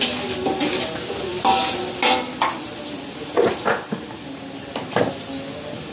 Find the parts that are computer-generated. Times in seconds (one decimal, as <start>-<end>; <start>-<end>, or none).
none